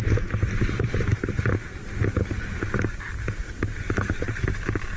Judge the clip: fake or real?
real